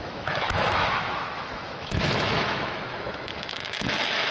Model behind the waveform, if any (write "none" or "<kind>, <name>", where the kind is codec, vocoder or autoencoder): autoencoder, DAC-VAE